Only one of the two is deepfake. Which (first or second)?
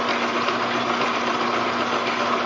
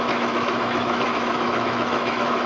second